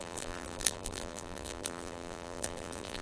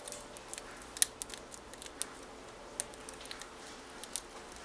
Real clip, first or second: second